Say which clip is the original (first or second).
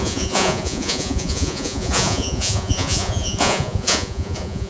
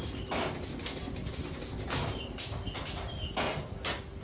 second